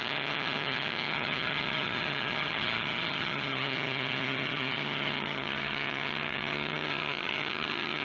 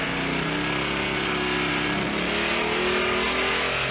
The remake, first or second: first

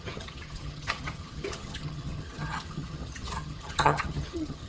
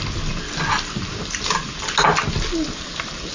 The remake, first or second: first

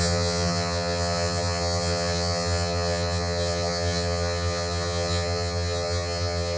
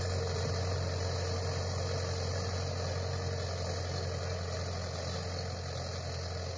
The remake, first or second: first